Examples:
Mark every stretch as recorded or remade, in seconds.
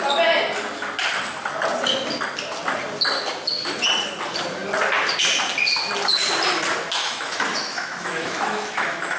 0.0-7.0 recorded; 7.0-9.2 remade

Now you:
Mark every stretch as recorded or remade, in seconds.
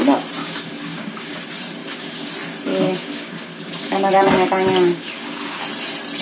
0.0-0.4 recorded; 0.4-1.4 remade; 1.4-1.8 recorded; 1.8-2.3 remade; 2.3-2.7 recorded; 2.7-4.5 remade; 4.5-4.9 recorded; 4.9-5.6 remade; 5.6-6.2 recorded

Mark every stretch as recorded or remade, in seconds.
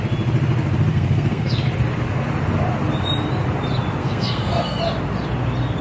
0.0-0.9 recorded; 0.9-1.5 remade; 1.5-4.0 recorded; 4.0-4.8 remade; 4.8-5.8 recorded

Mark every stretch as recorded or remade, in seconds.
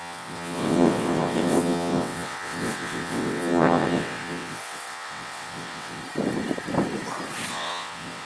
0.0-6.0 remade; 6.0-7.5 recorded; 7.5-8.2 remade